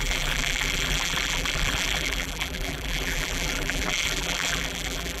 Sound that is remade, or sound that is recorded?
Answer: remade